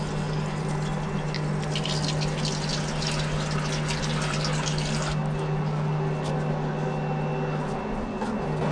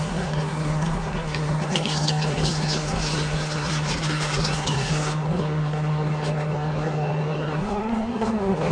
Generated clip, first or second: second